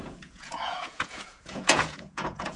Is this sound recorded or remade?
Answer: remade